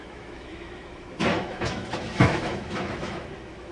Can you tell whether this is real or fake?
fake